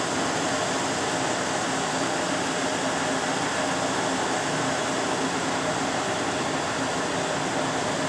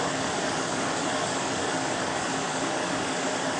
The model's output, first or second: second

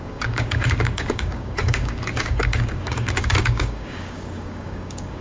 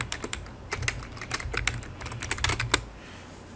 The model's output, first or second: first